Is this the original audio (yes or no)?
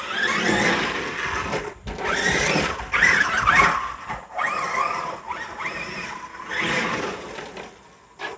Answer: yes